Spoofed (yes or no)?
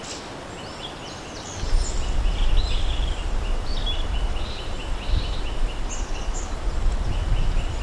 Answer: no